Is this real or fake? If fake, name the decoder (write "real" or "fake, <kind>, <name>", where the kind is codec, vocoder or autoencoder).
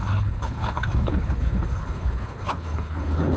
fake, codec, HILCodec